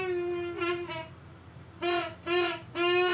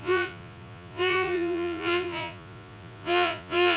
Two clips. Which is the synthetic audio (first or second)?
second